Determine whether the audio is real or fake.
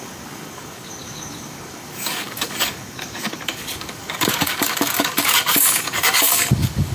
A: fake